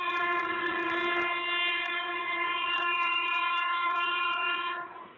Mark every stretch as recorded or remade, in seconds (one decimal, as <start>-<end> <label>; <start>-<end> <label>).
0.0-1.0 remade; 1.0-1.7 recorded; 1.7-5.2 remade